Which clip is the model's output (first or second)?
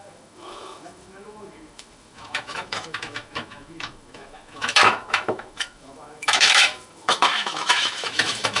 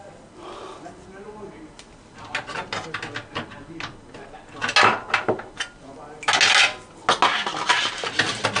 first